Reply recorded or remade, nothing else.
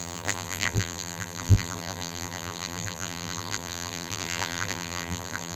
remade